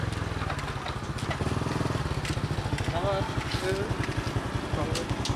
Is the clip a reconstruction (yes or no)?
no